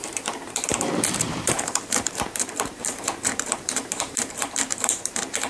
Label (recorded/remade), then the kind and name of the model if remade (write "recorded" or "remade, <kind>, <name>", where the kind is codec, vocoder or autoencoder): remade, vocoder, BigVGAN v2